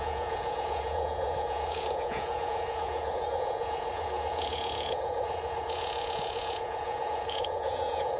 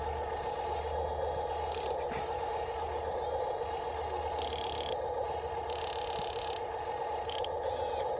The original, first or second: second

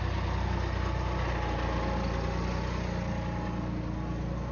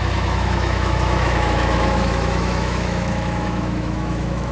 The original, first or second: first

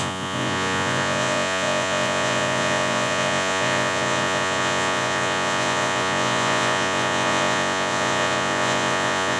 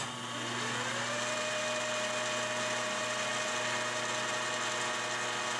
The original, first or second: second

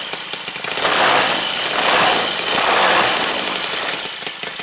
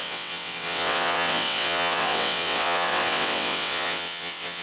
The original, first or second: first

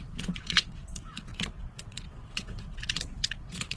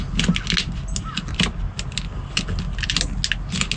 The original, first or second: second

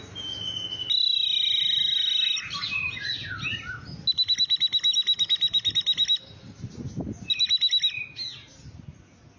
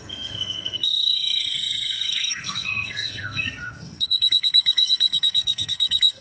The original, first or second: first